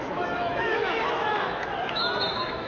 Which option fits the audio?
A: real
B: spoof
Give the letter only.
B